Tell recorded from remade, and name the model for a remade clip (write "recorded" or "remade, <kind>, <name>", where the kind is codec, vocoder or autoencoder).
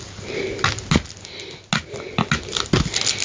recorded